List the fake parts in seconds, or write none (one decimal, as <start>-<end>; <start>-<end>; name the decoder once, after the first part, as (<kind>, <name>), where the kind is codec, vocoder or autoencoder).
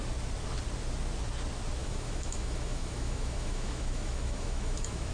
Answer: 1.8-5.1 (autoencoder, DAC-VAE)